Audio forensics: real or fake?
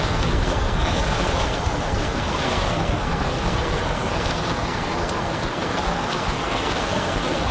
fake